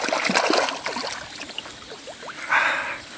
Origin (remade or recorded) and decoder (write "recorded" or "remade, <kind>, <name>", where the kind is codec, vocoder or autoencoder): recorded